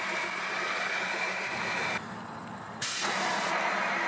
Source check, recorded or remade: recorded